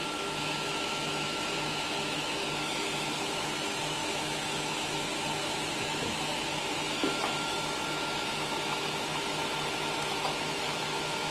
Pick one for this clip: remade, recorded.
remade